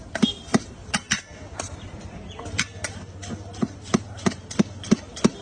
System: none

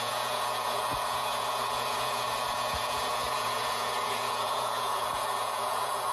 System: vocoder, Vocos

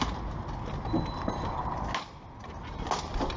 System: none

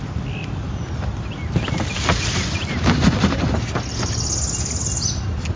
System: none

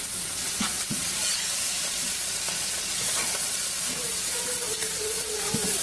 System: vocoder, Vocos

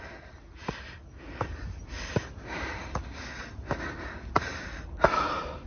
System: none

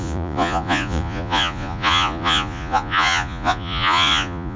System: vocoder, Vocos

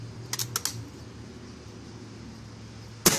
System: none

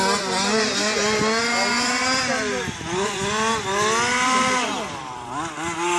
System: none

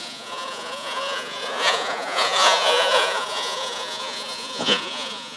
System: vocoder, Vocos